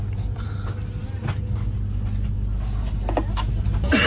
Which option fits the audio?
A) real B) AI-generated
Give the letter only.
A